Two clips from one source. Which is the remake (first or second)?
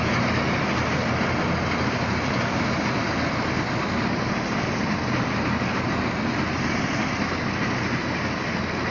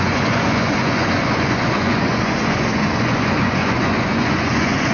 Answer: second